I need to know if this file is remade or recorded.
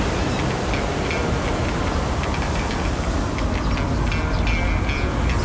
recorded